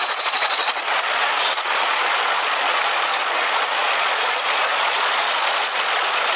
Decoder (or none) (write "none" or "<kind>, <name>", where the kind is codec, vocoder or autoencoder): vocoder, Vocos